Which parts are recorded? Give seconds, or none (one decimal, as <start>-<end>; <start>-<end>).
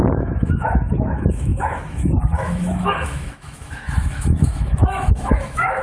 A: none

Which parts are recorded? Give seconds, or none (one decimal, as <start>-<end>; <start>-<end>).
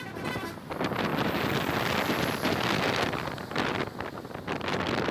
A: 0.0-5.1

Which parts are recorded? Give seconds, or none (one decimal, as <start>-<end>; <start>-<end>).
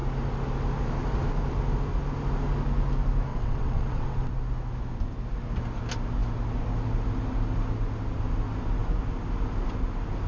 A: 0.0-3.3; 4.3-10.3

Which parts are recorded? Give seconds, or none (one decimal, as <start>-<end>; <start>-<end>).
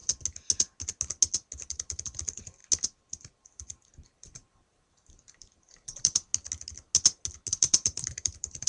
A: 0.0-1.7; 2.6-3.1; 6.3-7.5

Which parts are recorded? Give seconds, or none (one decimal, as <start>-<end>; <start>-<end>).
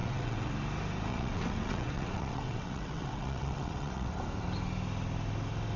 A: 0.5-1.1; 4.1-5.8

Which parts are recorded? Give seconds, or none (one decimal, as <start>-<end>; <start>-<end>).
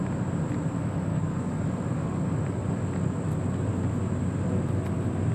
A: 0.0-1.1; 1.6-5.3